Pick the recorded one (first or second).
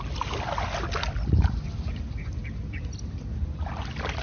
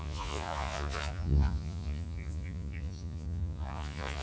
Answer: first